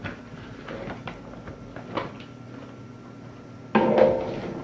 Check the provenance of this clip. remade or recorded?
recorded